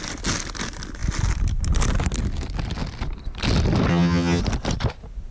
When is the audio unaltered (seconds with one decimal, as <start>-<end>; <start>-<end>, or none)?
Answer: 0.0-3.9; 4.4-5.3